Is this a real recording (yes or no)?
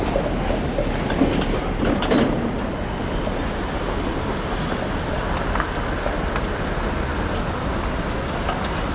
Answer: yes